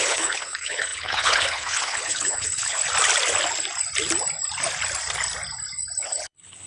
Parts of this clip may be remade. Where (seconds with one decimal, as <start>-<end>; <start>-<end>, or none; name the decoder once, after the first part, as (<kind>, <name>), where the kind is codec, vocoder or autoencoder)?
0.0-2.8 (codec, HILCodec); 6.0-6.7